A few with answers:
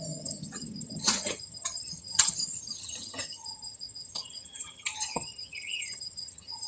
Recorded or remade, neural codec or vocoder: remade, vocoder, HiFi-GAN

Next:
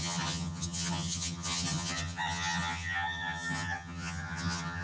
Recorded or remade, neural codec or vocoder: remade, vocoder, HiFi-GAN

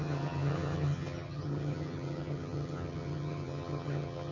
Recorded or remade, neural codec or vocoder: remade, vocoder, HiFi-GAN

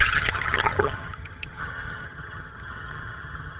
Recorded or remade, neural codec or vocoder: remade, vocoder, HiFi-GAN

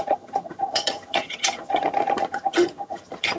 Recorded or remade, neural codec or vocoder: remade, vocoder, HiFi-GAN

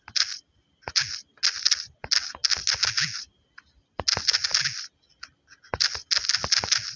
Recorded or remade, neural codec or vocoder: recorded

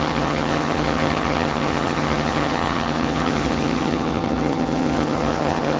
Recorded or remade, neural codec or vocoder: remade, vocoder, HiFi-GAN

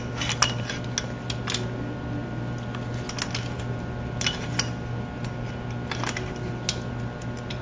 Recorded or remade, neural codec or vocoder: recorded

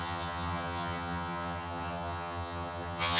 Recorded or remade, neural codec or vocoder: remade, vocoder, HiFi-GAN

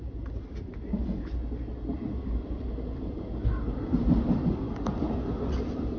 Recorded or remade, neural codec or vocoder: recorded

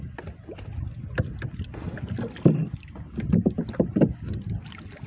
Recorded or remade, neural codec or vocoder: recorded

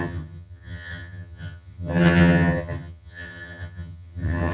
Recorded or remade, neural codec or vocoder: remade, vocoder, HiFi-GAN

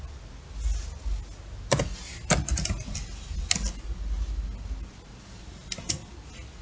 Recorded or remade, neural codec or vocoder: recorded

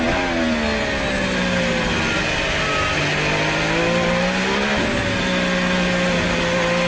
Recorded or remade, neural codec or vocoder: recorded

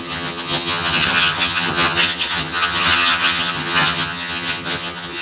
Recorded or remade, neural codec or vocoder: remade, vocoder, HiFi-GAN